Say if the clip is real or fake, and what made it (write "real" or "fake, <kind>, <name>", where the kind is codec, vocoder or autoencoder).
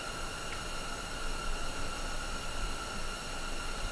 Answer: real